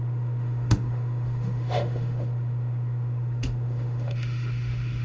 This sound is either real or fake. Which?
fake